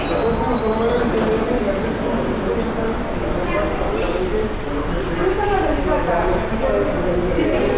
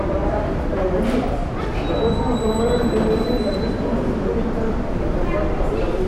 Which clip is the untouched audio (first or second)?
first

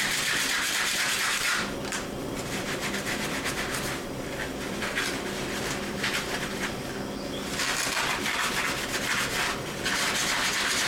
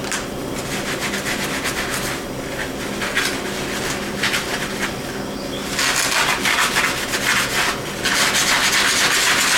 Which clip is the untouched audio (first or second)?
second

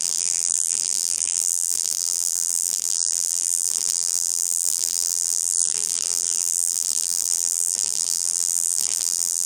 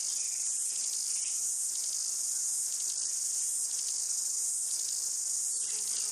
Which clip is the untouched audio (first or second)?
second